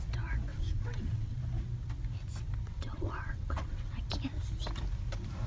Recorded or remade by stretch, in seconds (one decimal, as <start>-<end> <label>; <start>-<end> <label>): 0.0-0.5 recorded; 0.5-1.4 remade; 1.4-2.7 recorded; 2.7-4.0 remade; 4.0-5.5 recorded